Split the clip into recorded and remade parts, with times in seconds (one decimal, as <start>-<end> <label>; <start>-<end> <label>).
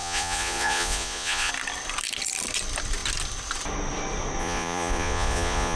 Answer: 0.0-1.5 remade; 1.5-4.4 recorded; 4.4-5.8 remade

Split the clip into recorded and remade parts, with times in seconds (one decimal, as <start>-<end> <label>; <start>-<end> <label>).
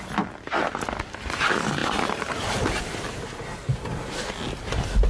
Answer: 0.0-5.1 recorded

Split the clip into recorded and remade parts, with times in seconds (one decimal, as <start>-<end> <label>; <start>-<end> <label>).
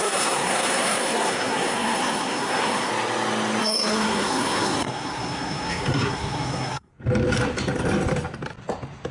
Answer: 0.0-2.9 remade; 2.9-3.6 recorded; 3.6-6.9 remade; 6.9-9.1 recorded